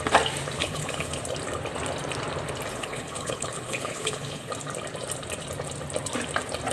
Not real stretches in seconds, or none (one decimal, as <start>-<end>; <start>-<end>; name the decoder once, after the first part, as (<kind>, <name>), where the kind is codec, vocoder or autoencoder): 0.6-1.2 (codec, HILCodec); 2.7-4.5